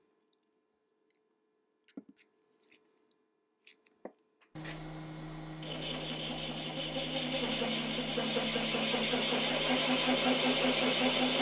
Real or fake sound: real